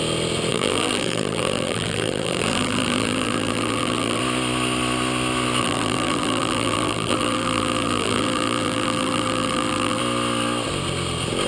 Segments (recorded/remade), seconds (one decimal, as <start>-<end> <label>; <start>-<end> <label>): 0.0-0.5 recorded; 0.5-4.2 remade; 4.2-5.6 recorded; 5.6-10.0 remade; 10.0-11.5 recorded